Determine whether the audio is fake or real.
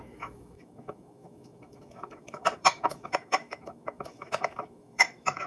fake